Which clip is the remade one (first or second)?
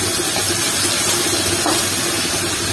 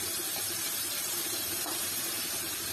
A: second